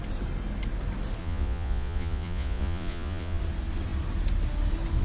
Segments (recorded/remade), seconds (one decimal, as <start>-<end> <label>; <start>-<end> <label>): 0.0-1.2 recorded; 1.2-3.4 remade; 3.4-5.0 recorded